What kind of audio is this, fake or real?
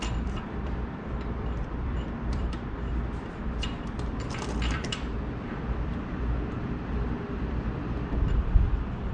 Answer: fake